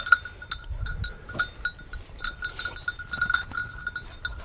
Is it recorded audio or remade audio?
recorded